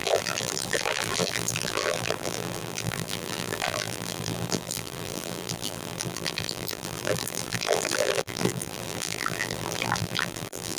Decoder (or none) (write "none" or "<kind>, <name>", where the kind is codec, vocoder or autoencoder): vocoder, BigVGAN v2